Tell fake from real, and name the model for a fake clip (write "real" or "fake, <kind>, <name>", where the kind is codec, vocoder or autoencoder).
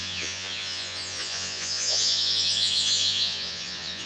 fake, vocoder, Vocos